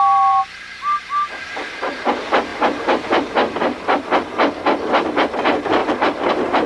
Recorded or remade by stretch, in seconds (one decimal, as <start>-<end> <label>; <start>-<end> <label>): 0.0-2.5 recorded; 2.5-3.3 remade; 3.3-5.8 recorded; 5.8-6.7 remade